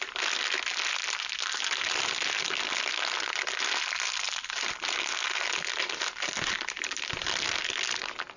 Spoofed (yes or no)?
no